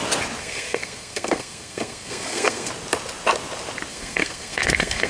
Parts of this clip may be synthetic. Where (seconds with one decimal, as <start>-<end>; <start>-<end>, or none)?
0.4-2.7; 3.9-5.1